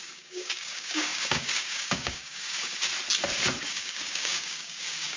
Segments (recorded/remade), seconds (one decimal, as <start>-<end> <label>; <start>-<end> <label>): 0.0-2.9 remade; 2.9-3.6 recorded; 3.6-5.2 remade